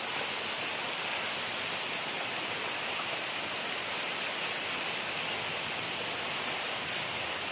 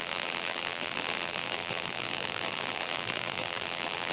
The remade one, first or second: second